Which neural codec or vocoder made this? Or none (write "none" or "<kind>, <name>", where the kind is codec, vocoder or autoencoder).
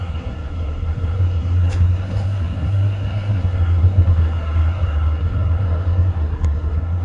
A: codec, SNAC